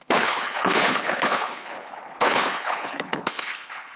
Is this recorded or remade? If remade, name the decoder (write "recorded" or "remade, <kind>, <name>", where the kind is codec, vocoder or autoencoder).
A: remade, codec, HILCodec